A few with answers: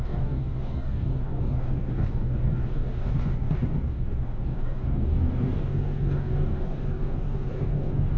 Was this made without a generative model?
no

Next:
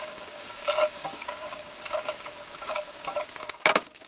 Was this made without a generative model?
no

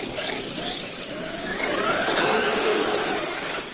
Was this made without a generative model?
no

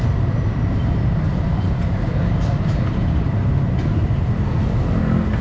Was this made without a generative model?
yes